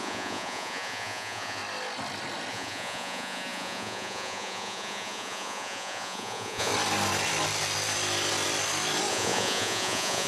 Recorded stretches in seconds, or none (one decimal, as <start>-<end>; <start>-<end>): 1.6-2.5; 6.7-9.1